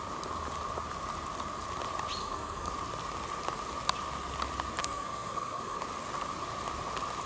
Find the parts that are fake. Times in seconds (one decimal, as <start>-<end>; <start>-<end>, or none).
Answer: 2.2-2.7; 4.8-5.8